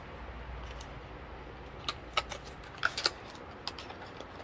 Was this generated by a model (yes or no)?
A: no